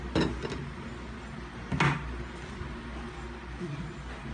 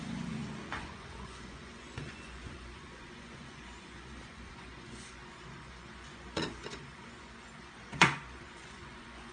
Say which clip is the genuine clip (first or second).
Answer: first